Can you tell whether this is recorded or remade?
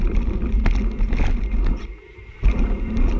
recorded